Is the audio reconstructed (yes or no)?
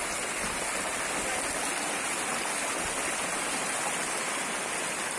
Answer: no